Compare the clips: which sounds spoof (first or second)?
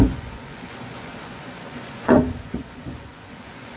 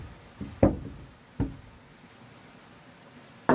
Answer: first